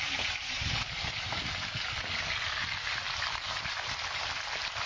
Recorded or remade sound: recorded